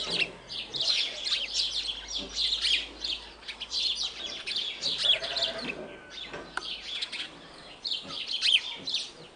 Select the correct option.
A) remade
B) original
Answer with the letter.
B